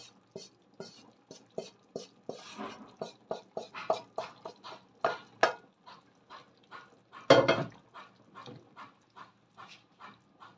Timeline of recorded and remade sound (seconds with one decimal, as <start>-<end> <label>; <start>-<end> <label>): 0.0-10.6 recorded